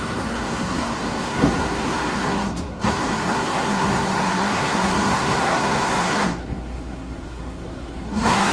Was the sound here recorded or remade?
remade